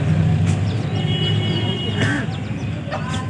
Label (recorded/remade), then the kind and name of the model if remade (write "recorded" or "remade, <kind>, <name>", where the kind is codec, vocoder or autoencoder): recorded